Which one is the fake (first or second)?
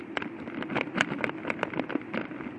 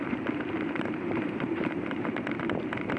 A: second